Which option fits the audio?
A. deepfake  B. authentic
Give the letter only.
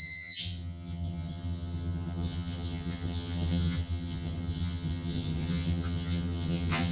A